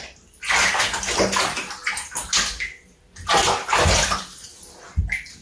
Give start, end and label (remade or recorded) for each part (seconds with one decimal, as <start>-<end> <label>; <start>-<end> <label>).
0.0-5.4 recorded